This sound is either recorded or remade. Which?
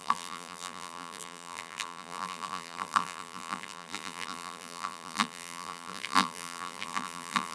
remade